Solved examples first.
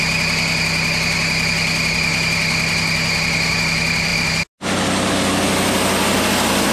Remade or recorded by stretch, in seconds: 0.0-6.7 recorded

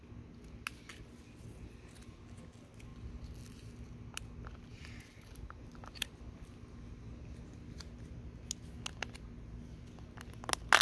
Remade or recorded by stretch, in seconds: 0.0-10.8 recorded